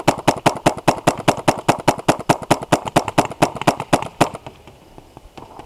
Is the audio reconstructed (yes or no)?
no